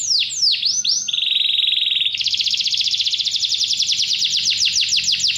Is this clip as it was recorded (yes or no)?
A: yes